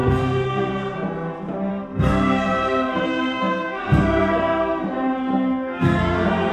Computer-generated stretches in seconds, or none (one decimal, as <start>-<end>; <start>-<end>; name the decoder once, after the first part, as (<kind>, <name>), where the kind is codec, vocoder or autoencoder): 0.0-0.7 (codec, SNAC); 1.7-4.8; 5.3-6.5